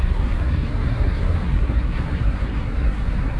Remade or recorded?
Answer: remade